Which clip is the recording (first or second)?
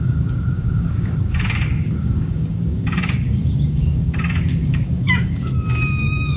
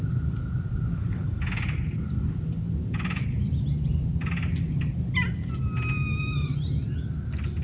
second